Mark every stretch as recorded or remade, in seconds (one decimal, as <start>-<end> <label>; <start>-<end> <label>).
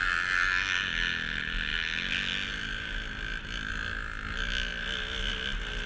0.0-5.9 recorded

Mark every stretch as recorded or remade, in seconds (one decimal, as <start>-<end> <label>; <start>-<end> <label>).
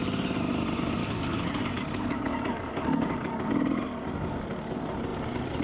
0.0-1.0 recorded; 1.0-3.5 remade; 3.5-5.6 recorded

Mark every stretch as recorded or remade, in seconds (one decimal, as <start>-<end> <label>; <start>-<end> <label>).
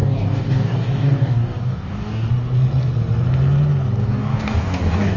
0.0-2.3 remade; 2.3-4.0 recorded; 4.0-5.2 remade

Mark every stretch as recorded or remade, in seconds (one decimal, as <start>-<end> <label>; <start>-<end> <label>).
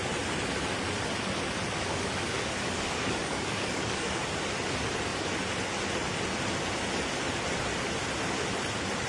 0.0-1.9 recorded; 1.9-4.2 remade; 4.2-9.1 recorded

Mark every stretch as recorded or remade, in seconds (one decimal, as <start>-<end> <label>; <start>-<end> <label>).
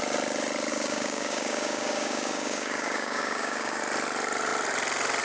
0.0-0.7 recorded; 0.7-3.8 remade; 3.8-5.2 recorded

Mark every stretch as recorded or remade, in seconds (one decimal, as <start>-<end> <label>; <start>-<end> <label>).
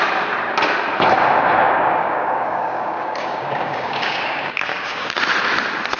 0.0-1.6 recorded; 1.6-5.2 remade; 5.2-6.0 recorded